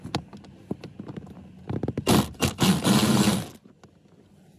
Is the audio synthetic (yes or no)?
no